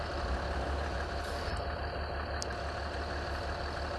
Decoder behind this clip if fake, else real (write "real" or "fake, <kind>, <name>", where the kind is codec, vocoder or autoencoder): real